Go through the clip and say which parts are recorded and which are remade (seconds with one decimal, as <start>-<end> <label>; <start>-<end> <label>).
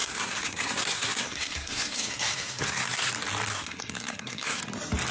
0.0-3.1 remade; 3.1-3.5 recorded; 3.5-4.6 remade; 4.6-5.1 recorded